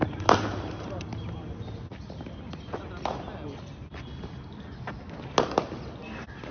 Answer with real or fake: real